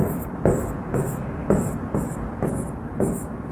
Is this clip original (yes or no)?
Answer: no